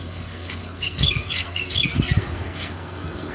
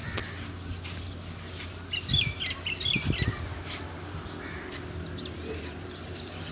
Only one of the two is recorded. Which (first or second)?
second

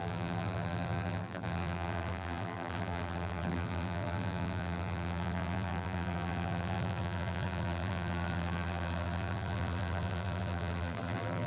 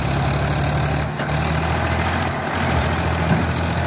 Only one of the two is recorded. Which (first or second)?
second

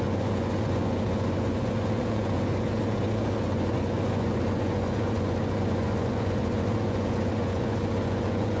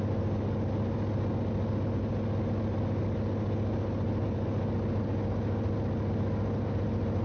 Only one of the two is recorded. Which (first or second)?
second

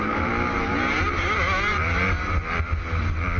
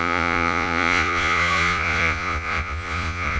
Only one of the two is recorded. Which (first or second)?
first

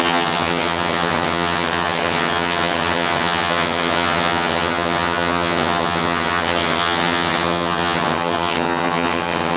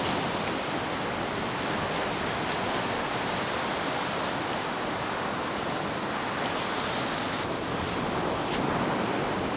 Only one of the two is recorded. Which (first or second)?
second